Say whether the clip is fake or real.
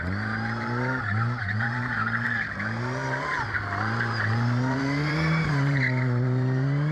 fake